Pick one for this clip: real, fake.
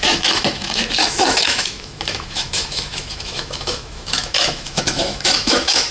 fake